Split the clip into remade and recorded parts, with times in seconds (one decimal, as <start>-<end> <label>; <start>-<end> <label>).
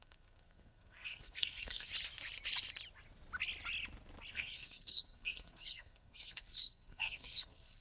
0.0-1.9 remade; 1.9-4.3 recorded; 4.3-7.8 remade